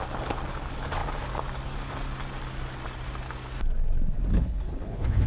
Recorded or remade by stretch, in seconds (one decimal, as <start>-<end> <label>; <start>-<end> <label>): 0.0-4.3 recorded; 4.3-5.3 remade